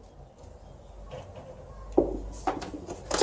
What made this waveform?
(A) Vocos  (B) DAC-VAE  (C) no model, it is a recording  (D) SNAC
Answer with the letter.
C